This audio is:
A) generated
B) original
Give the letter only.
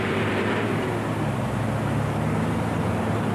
B